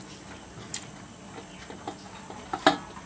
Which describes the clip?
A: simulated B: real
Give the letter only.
B